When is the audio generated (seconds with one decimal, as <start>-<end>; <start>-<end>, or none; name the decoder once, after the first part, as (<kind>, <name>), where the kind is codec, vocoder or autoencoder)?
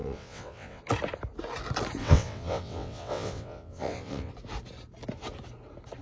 0.0-0.8 (vocoder, WaveNeXt); 2.0-4.3